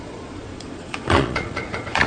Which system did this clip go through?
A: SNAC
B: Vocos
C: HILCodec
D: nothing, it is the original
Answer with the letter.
B